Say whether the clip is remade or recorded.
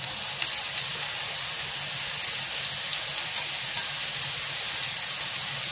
recorded